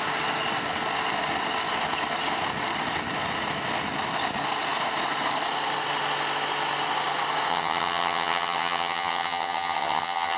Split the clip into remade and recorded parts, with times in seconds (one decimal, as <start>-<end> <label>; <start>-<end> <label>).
0.0-7.5 recorded; 7.5-10.4 remade